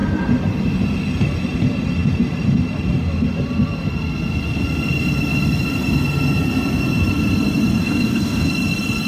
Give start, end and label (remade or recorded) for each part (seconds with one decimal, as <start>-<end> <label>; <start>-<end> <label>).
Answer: 0.0-7.8 recorded; 7.8-8.5 remade; 8.5-9.1 recorded